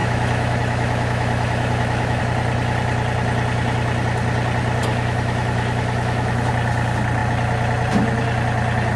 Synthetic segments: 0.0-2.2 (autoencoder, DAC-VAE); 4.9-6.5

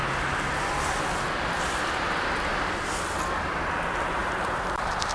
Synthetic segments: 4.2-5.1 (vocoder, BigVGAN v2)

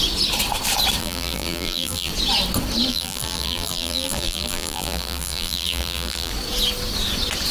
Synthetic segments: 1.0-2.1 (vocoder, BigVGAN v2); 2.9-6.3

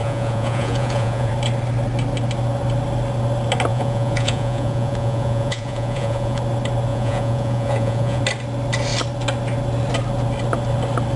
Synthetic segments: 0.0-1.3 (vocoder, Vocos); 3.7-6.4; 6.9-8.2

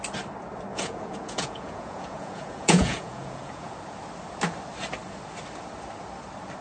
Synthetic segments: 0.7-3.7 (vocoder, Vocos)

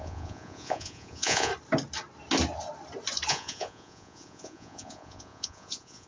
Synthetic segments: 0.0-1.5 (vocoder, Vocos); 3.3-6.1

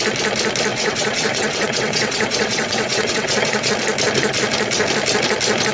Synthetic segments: 0.7-3.7 (vocoder, WaveNeXt)